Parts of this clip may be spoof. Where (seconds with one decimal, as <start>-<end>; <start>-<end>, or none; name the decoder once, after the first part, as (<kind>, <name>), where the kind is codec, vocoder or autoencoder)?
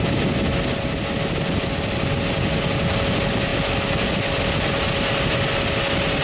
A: none